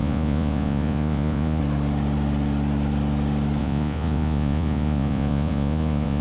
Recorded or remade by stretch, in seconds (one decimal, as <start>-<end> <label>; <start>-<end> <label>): 0.0-1.6 remade; 1.6-3.6 recorded; 3.6-6.2 remade